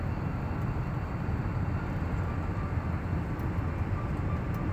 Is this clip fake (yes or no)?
no